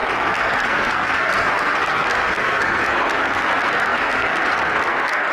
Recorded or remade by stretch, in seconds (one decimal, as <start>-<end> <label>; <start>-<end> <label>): 0.0-5.3 remade